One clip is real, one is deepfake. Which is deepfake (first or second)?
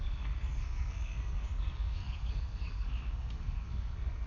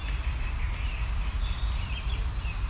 first